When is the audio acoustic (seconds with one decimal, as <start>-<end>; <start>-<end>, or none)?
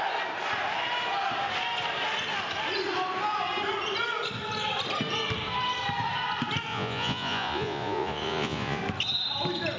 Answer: 0.0-6.7; 8.8-9.8